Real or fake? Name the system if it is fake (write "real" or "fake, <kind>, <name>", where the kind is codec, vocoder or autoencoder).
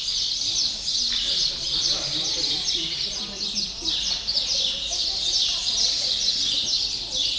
real